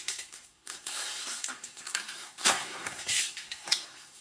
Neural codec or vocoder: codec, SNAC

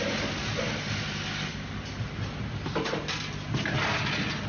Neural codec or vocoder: none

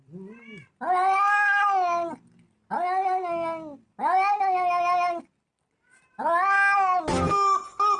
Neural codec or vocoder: none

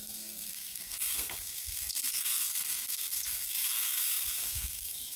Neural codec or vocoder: codec, SNAC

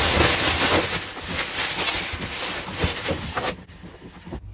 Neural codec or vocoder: none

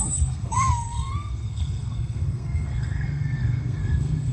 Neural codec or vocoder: codec, SNAC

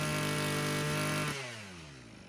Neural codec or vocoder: none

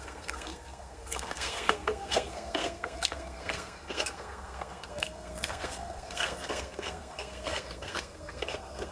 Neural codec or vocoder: codec, SNAC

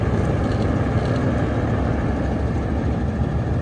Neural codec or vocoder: none